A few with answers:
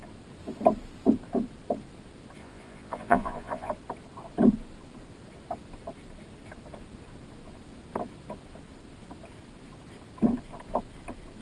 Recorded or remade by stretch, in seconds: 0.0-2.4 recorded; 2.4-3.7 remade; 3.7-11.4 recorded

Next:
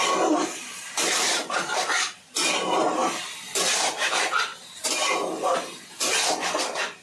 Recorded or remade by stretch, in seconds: 0.0-3.0 remade; 3.0-3.6 recorded; 3.6-4.5 remade; 4.5-6.6 recorded; 6.6-7.0 remade

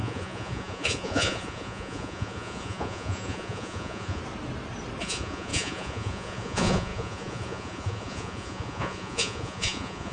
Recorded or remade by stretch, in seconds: 0.0-4.2 remade; 4.2-5.0 recorded; 5.0-10.1 remade

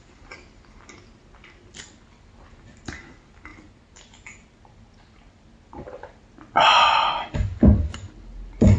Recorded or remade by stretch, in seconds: 0.0-8.8 recorded

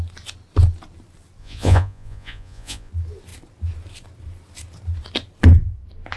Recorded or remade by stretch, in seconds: 0.0-1.4 recorded; 1.4-2.9 remade; 2.9-6.2 recorded

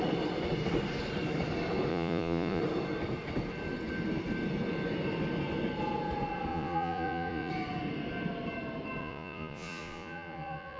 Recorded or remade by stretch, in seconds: 0.0-1.9 recorded; 1.9-2.6 remade; 2.6-6.5 recorded; 6.5-7.5 remade; 7.5-9.0 recorded; 9.0-10.8 remade